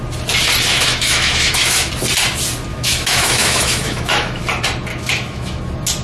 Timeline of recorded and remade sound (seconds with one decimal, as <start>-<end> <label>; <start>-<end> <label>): 0.0-0.7 recorded; 0.7-1.9 remade; 1.9-2.7 recorded; 2.7-4.4 remade; 4.4-4.9 recorded; 4.9-5.6 remade; 5.6-6.0 recorded